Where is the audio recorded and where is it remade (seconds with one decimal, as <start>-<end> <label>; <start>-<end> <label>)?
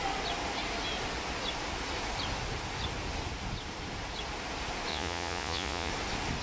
0.0-4.9 recorded; 4.9-5.9 remade; 5.9-6.4 recorded